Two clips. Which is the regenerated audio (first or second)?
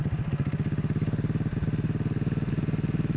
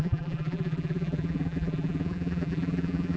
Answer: second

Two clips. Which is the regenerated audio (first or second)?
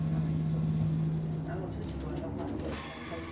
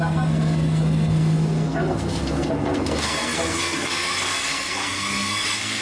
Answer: second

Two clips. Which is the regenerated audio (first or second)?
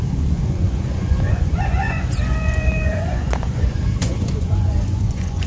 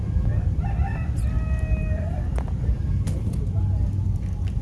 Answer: first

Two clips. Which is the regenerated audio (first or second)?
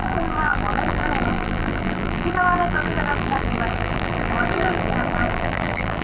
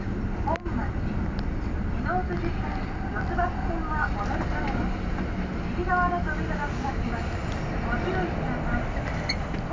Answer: first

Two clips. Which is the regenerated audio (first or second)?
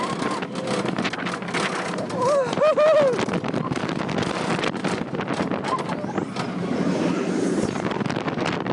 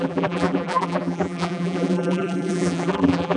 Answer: second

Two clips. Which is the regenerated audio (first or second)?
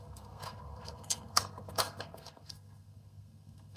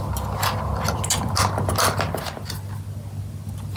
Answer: first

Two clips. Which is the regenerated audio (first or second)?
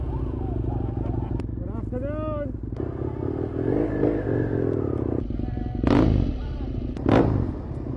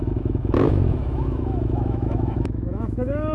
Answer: second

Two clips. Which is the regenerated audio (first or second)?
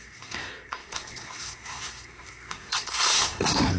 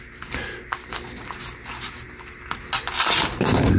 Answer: first